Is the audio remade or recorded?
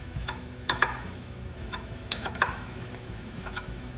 remade